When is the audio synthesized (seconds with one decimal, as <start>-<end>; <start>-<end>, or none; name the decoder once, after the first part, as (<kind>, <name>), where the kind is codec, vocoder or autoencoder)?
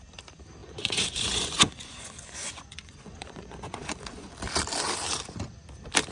0.6-4.3 (vocoder, Vocos)